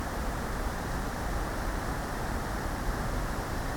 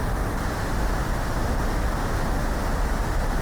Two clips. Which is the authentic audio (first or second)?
second